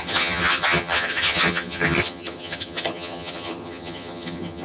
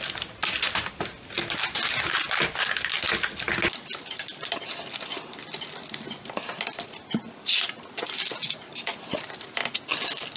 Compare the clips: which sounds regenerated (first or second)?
first